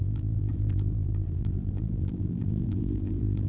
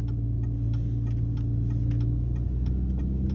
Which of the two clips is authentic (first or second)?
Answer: second